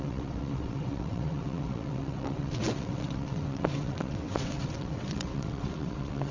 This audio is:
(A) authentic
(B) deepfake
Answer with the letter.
B